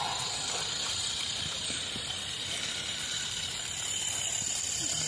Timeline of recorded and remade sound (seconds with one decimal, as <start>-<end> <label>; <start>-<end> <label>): 0.0-1.0 recorded; 1.0-4.1 remade; 4.1-5.1 recorded